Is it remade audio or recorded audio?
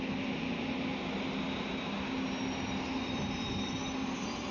recorded